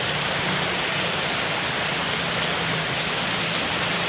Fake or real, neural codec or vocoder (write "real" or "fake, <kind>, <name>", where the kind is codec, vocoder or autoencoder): real